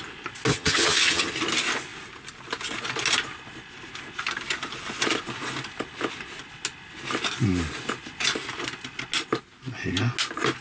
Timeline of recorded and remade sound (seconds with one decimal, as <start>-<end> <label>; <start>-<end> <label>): 0.0-0.5 recorded; 0.5-1.3 remade; 1.3-10.6 recorded